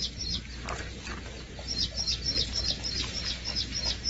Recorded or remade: recorded